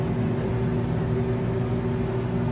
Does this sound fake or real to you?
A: real